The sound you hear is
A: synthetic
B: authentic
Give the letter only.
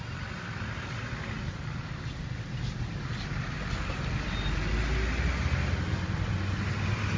B